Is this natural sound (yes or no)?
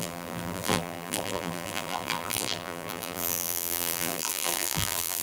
no